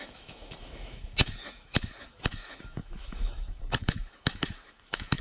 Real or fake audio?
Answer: fake